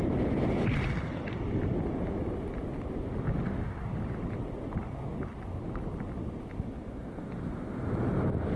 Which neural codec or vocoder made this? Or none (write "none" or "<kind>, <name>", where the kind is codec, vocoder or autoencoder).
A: none